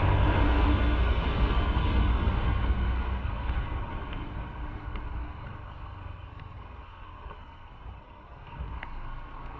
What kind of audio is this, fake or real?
fake